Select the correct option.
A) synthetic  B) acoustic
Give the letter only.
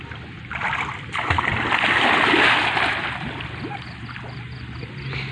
B